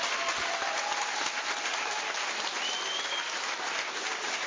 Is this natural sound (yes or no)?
yes